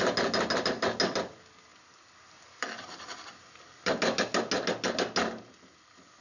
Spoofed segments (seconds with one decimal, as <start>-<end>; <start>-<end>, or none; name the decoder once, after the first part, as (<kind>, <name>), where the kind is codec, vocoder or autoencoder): none